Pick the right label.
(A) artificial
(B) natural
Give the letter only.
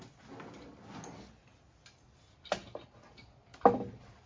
B